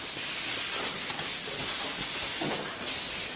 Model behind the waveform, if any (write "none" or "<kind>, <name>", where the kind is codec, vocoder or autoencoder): none